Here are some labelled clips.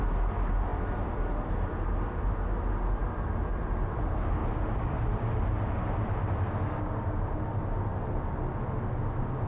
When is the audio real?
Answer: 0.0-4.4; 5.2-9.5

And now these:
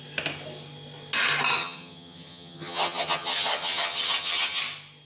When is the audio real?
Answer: 0.0-1.6; 4.6-5.0

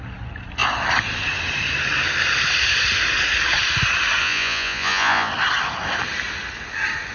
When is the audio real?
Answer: 0.0-4.2; 5.3-7.1

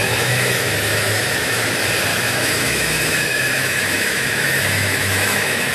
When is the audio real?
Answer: 1.7-2.1

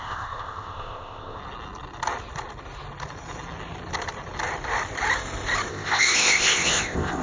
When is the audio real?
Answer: 1.4-5.7